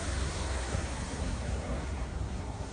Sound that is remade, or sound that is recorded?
remade